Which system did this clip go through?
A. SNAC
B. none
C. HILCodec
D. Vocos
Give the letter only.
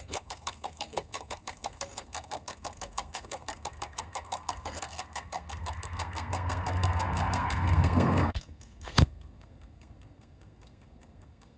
A